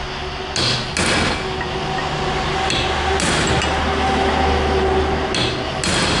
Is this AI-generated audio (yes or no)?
no